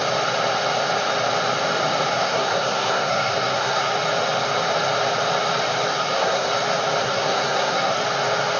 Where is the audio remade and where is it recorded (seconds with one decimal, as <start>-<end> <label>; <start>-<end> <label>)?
0.0-2.2 recorded; 2.2-3.9 remade; 3.9-5.9 recorded; 5.9-6.5 remade; 6.5-7.0 recorded; 7.0-8.0 remade; 8.0-8.6 recorded